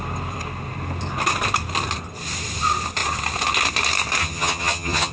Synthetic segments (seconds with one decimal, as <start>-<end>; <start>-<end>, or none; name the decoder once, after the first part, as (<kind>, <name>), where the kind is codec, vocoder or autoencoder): 4.2-5.1 (vocoder, HiFi-GAN)